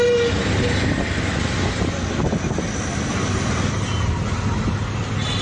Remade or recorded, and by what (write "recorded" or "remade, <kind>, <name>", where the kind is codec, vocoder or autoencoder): recorded